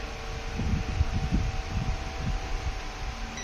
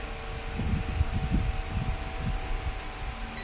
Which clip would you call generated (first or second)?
first